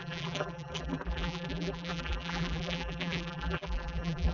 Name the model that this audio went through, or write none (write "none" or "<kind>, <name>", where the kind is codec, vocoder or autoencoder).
vocoder, BigVGAN v2